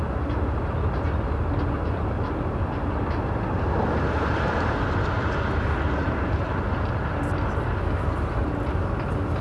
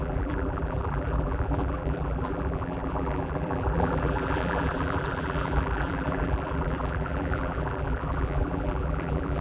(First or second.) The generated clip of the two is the second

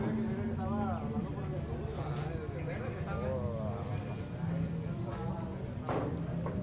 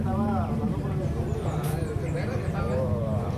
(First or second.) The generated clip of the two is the second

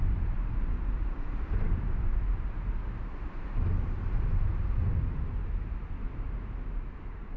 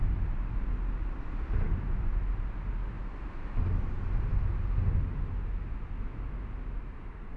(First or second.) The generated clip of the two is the first